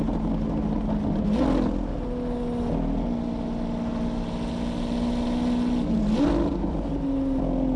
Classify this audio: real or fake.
real